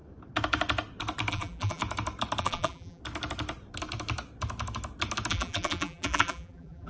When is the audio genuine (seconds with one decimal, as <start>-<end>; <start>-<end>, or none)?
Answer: 0.0-1.3; 1.8-2.4; 3.0-5.3